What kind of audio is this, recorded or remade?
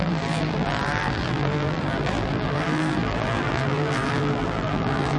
remade